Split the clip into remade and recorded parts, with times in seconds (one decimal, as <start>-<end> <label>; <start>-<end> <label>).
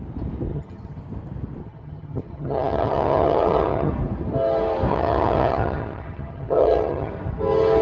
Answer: 0.0-0.5 recorded; 0.5-1.0 remade; 1.0-1.6 recorded; 1.6-3.9 remade; 3.9-4.9 recorded; 4.9-7.1 remade; 7.1-7.8 recorded